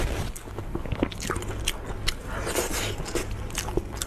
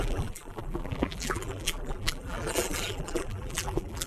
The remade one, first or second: second